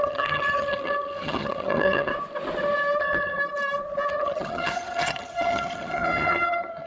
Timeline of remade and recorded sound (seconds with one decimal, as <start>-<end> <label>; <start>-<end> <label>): 0.0-2.1 remade; 2.1-3.0 recorded; 3.0-3.4 remade; 3.4-4.1 recorded; 4.1-6.9 remade